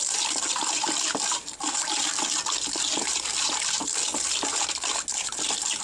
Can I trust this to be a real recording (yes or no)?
yes